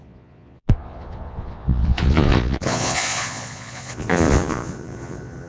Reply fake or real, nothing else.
fake